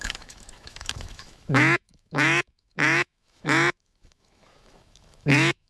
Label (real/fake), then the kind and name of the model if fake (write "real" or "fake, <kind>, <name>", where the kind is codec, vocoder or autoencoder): fake, autoencoder, DAC-VAE